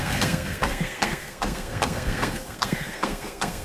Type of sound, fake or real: fake